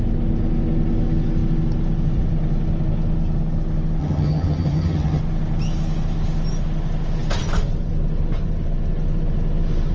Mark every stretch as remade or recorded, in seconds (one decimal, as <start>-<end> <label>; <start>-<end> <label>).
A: 0.0-4.0 recorded; 4.0-5.2 remade; 5.2-9.9 recorded